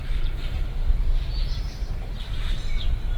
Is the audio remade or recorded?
remade